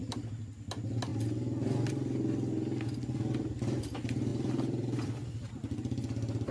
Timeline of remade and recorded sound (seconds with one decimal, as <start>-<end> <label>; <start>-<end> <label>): 0.0-4.3 recorded; 4.3-5.5 remade; 5.5-6.5 recorded